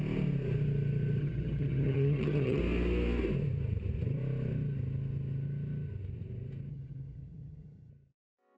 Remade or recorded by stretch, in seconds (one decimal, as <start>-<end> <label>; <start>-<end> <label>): 0.0-1.2 recorded; 1.2-2.6 remade; 2.6-6.7 recorded; 6.7-7.9 remade; 7.9-8.6 recorded